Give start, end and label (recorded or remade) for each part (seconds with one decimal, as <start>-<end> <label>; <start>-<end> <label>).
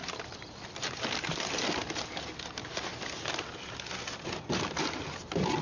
0.0-5.6 recorded